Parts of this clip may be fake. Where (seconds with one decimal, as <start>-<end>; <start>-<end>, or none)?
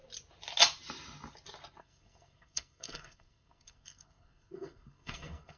1.8-5.6